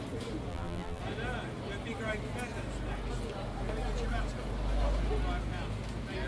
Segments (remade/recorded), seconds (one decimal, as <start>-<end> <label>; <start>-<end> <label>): 0.0-0.5 recorded; 0.5-1.0 remade; 1.0-6.3 recorded